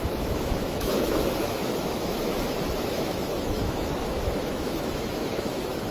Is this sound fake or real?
fake